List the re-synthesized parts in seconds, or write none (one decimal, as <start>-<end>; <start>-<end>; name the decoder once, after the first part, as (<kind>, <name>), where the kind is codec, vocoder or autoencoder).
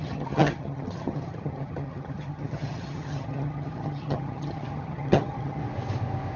0.0-5.6 (vocoder, HiFi-GAN)